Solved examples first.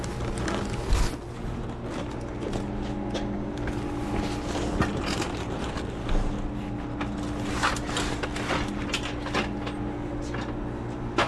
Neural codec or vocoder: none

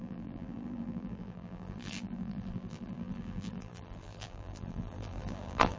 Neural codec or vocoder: vocoder, BigVGAN v2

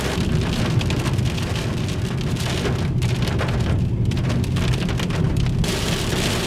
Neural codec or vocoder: none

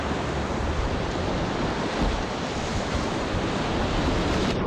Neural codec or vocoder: vocoder, BigVGAN v2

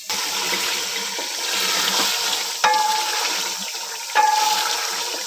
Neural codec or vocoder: vocoder, BigVGAN v2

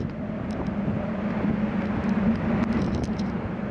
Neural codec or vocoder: none